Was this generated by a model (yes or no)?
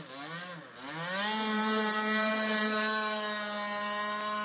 no